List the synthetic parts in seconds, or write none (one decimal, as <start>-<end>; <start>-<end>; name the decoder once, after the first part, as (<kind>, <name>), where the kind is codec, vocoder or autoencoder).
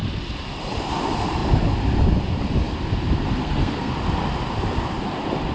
3.4-3.9 (codec, SNAC)